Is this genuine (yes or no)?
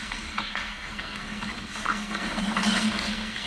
no